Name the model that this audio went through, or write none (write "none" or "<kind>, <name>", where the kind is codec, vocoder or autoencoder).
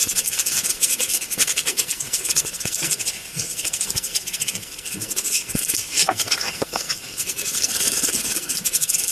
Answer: codec, SNAC